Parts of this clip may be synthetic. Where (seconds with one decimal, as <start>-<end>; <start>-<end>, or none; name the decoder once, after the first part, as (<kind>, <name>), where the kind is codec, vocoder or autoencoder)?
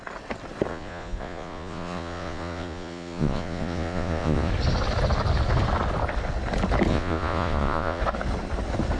0.7-4.5 (vocoder, Vocos); 6.9-8.0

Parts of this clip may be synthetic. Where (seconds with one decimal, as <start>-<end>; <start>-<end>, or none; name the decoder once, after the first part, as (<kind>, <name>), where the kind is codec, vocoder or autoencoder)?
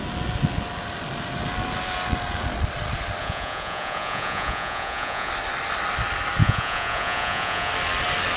3.2-5.3 (vocoder, Vocos); 6.4-7.7